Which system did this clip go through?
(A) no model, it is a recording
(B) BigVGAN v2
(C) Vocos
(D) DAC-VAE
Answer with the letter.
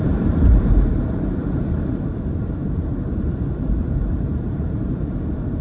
B